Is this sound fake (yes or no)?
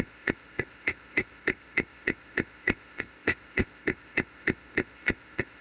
yes